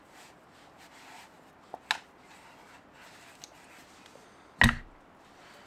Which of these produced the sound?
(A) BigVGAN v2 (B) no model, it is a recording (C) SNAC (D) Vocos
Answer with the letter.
B